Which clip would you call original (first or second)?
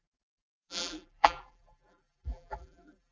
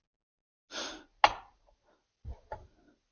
second